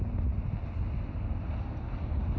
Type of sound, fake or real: real